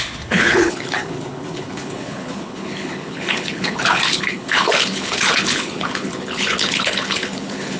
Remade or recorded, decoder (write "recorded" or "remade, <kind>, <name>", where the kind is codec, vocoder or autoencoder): remade, codec, HILCodec